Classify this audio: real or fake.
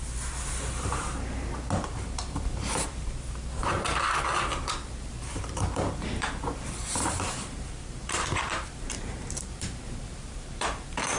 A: fake